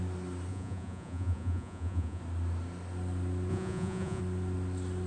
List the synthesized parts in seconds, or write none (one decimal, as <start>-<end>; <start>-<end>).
0.5-2.2; 3.5-4.2